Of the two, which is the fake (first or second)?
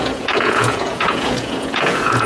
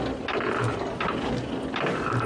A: first